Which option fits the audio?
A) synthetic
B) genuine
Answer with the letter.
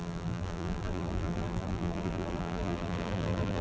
A